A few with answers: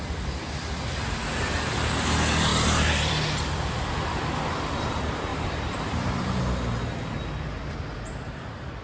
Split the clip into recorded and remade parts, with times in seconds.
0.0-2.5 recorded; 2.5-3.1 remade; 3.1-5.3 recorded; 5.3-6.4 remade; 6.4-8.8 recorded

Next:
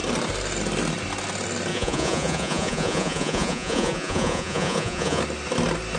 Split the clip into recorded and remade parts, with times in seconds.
0.0-1.7 recorded; 1.7-5.2 remade; 5.2-6.0 recorded

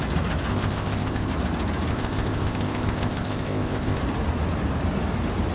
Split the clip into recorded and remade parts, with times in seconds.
0.0-0.5 recorded; 0.5-1.3 remade; 1.3-1.9 recorded; 1.9-4.0 remade; 4.0-5.5 recorded

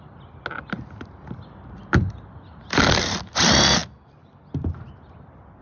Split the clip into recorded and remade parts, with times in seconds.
0.0-5.6 recorded

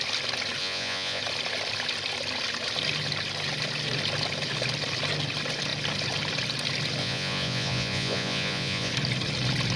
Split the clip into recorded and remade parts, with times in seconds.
0.0-0.6 recorded; 0.6-1.2 remade; 1.2-7.0 recorded; 7.0-8.9 remade; 8.9-9.8 recorded